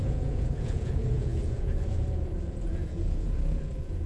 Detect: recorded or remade remade